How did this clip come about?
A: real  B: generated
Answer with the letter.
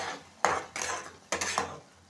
A